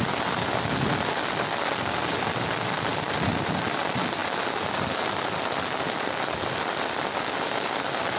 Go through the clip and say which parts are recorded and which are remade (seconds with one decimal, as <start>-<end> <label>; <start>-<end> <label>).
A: 0.0-8.2 recorded